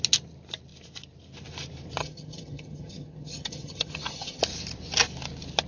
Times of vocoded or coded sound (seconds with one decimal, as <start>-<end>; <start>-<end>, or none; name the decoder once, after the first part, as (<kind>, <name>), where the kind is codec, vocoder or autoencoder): 2.0-4.4 (vocoder, HiFi-GAN)